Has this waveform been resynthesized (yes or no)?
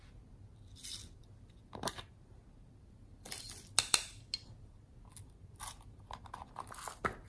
no